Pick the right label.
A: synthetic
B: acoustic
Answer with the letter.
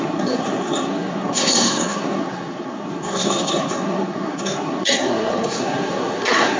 A